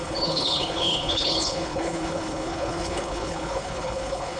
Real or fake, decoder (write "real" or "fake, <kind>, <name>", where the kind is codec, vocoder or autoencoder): fake, codec, HILCodec